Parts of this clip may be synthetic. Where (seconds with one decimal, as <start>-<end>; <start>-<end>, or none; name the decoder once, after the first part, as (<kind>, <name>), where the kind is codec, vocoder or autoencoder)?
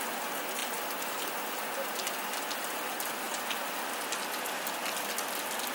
none